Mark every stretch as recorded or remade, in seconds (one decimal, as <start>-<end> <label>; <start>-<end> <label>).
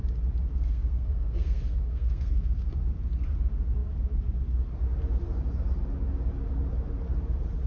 0.0-0.5 recorded; 0.5-2.7 remade; 2.7-7.7 recorded